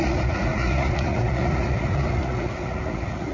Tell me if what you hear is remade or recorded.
remade